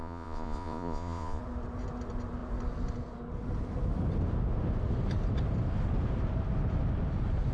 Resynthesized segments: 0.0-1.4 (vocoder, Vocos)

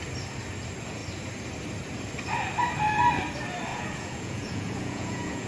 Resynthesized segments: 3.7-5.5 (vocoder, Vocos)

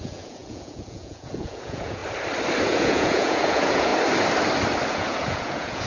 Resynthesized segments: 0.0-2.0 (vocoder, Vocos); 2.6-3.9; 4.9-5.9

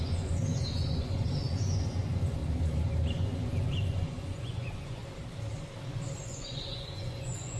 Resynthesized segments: 0.0-2.4 (vocoder, Vocos); 3.1-5.0; 6.2-7.6

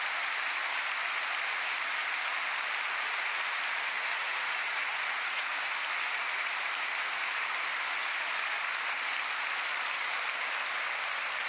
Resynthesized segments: 4.2-5.5 (vocoder, Vocos)

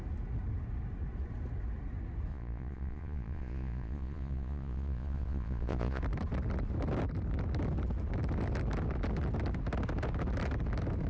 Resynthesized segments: 2.3-6.0 (vocoder, Vocos)